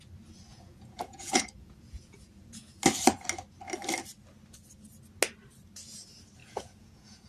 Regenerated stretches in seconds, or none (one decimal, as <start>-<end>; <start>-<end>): 0.5-2.7; 6.4-7.3

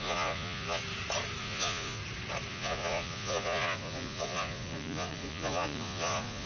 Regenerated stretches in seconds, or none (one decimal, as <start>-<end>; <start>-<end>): 0.0-0.8; 1.4-2.0; 2.5-6.5

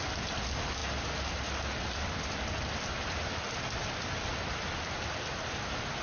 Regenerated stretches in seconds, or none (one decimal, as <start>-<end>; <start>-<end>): none

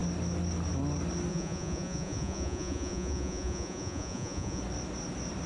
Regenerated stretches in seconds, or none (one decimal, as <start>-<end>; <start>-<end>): 1.3-4.6